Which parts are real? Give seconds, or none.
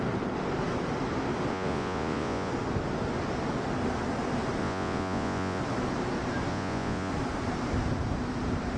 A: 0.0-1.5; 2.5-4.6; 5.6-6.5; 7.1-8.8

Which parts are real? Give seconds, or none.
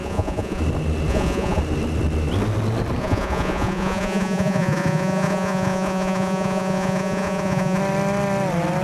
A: 0.6-1.1; 1.6-3.0; 7.8-8.8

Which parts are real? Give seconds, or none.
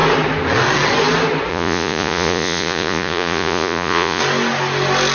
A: 0.0-1.5; 4.2-5.1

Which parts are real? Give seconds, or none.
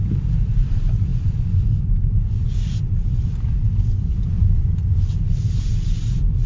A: none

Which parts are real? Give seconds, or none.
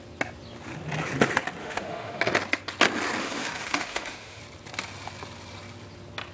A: 0.0-1.6; 2.2-3.2; 4.4-6.3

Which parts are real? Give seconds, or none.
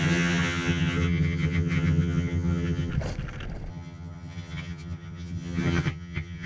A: 2.9-3.7